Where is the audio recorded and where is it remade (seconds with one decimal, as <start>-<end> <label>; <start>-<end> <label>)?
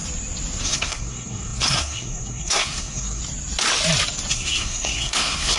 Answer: 0.0-0.6 recorded; 0.6-3.2 remade; 3.2-4.3 recorded; 4.3-5.6 remade